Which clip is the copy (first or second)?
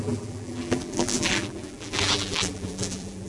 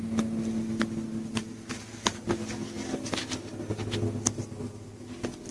first